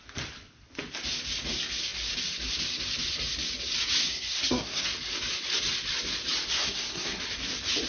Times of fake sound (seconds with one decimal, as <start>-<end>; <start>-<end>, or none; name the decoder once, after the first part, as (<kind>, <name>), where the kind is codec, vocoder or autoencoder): 4.0-4.9 (codec, SNAC); 6.5-7.2